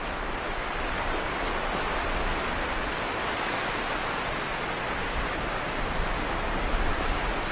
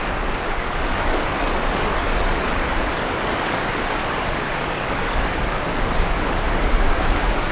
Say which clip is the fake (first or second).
second